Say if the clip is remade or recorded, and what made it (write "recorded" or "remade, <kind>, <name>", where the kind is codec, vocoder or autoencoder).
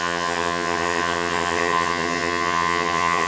remade, vocoder, HiFi-GAN